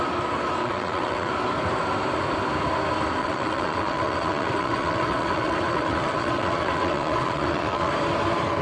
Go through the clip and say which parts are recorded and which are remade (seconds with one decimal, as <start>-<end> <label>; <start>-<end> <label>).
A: 0.0-0.6 recorded; 0.6-1.3 remade; 1.3-3.2 recorded; 3.2-7.9 remade; 7.9-8.6 recorded

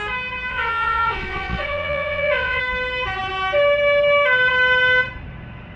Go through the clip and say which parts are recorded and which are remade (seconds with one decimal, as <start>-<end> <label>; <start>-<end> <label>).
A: 0.0-0.5 recorded; 0.5-2.6 remade; 2.6-5.8 recorded